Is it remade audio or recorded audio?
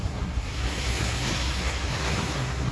remade